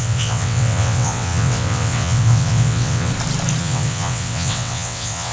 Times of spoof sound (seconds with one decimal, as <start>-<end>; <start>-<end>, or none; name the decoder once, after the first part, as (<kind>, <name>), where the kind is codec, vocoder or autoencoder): 0.0-3.1 (vocoder, WaveNeXt); 3.6-5.3